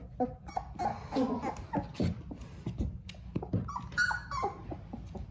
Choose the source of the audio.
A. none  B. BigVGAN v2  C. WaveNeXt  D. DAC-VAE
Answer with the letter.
A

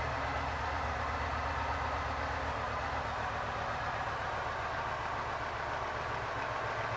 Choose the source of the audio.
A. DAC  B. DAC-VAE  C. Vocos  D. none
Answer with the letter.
D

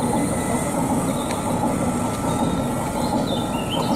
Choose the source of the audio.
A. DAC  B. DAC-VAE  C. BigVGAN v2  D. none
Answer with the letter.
D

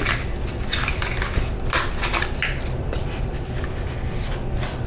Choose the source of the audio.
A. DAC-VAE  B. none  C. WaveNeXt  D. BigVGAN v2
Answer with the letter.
B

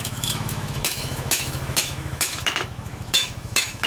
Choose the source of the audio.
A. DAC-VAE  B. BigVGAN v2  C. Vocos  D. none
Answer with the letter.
A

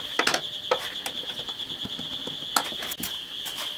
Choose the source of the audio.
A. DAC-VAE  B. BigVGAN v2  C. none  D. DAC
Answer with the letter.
C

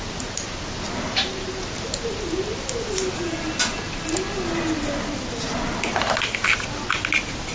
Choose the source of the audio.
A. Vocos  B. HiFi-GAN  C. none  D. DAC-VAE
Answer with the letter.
C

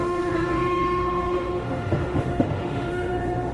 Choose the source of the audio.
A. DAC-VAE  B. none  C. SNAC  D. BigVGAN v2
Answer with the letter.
A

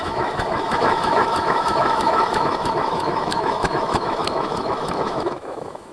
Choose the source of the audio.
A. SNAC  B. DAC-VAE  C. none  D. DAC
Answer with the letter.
B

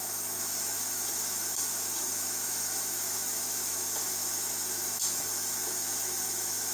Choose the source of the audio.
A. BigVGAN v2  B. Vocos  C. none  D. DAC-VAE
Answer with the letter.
D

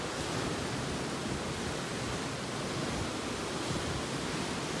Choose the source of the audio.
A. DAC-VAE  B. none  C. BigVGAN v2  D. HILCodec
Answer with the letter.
B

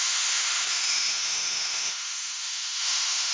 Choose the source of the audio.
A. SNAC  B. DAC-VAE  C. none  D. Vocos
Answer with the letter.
B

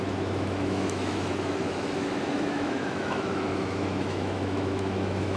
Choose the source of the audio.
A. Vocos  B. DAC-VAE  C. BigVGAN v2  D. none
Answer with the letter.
B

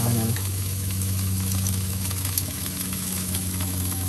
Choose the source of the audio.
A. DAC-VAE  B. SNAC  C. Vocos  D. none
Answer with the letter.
A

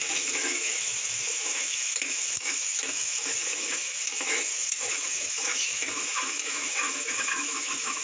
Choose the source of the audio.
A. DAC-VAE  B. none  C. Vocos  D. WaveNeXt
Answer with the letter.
A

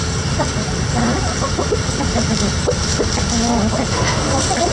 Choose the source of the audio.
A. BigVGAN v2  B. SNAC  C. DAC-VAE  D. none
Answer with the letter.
D